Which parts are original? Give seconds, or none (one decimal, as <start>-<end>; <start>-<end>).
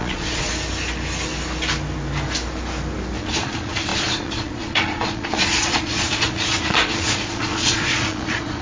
0.5-3.2